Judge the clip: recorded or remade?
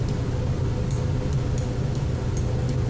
recorded